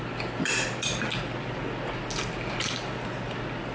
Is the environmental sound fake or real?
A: real